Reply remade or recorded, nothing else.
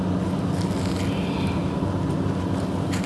recorded